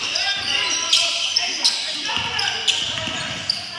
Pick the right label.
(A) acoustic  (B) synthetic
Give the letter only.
A